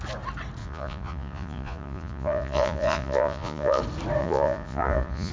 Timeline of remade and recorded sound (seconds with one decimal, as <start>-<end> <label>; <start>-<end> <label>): 0.0-0.6 recorded; 0.6-3.8 remade; 3.8-4.2 recorded; 4.2-5.3 remade